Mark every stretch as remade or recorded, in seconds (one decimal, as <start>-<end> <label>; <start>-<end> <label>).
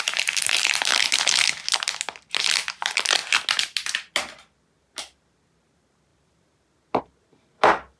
0.0-0.9 remade; 0.9-2.7 recorded; 2.7-3.2 remade; 3.2-4.8 recorded; 4.8-8.0 remade